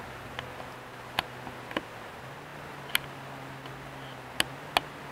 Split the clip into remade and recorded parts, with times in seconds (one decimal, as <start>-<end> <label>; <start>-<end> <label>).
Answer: 0.0-5.1 recorded